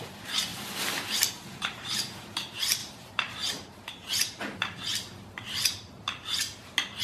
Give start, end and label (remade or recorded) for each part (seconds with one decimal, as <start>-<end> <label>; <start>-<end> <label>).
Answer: 0.0-0.5 remade; 0.5-1.3 recorded; 1.3-4.9 remade; 4.9-5.6 recorded; 5.6-7.0 remade